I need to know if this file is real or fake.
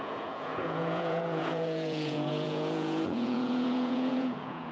fake